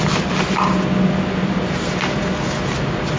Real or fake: real